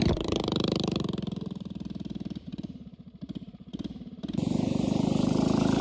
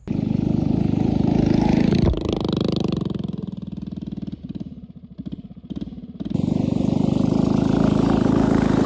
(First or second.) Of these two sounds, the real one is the second